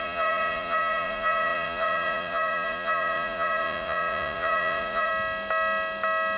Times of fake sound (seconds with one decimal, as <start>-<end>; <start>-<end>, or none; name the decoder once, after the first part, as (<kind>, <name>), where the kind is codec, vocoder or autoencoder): 0.0-5.1 (vocoder, Vocos)